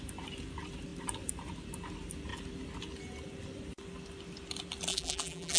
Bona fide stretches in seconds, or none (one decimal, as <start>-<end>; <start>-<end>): 0.0-4.9

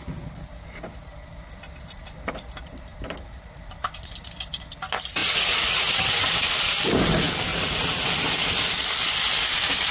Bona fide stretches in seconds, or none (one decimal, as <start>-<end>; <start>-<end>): 0.0-5.2; 5.9-7.5; 8.1-9.9

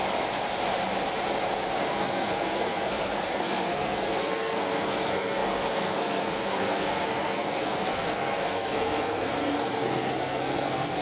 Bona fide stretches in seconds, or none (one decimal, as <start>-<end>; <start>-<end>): 0.0-1.8

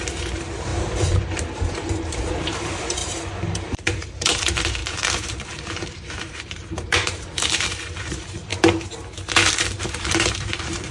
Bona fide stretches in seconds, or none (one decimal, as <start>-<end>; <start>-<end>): 3.0-4.0; 8.5-9.8

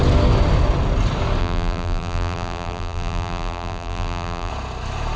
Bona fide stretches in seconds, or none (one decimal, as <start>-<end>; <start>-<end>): 0.0-1.4; 4.5-5.2